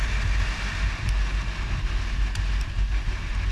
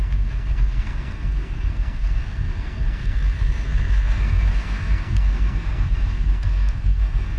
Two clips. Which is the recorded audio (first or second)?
first